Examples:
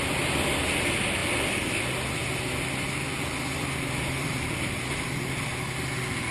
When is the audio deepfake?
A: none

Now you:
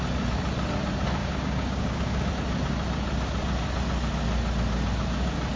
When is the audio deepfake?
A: 1.2-2.3 (codec, DAC)

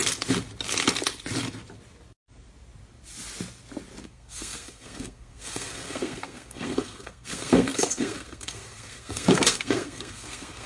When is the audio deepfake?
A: 4.0-10.7 (codec, SNAC)

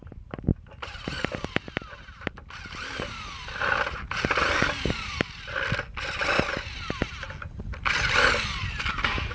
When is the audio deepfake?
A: 0.5-1.1 (vocoder, BigVGAN v2); 2.9-5.6